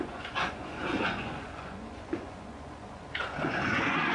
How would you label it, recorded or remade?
remade